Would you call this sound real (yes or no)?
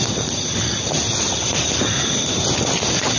yes